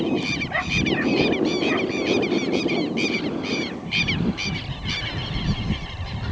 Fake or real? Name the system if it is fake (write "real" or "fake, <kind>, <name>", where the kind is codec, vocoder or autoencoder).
real